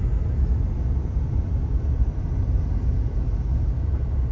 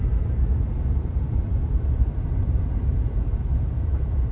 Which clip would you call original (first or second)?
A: first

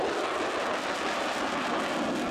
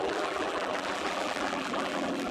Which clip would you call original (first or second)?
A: first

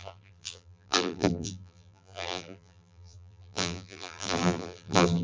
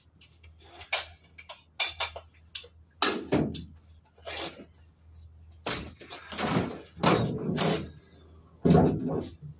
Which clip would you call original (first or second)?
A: second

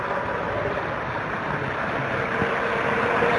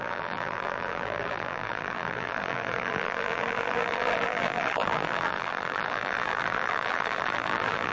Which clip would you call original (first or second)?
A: first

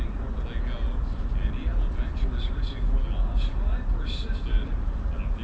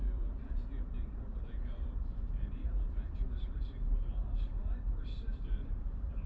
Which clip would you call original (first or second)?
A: first